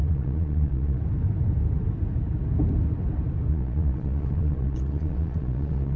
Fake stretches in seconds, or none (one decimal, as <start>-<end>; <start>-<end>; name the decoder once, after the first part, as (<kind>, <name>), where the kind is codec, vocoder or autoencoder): 0.0-1.0 (vocoder, Vocos); 3.5-6.0